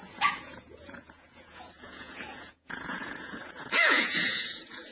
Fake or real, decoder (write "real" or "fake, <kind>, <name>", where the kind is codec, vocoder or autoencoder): fake, vocoder, Vocos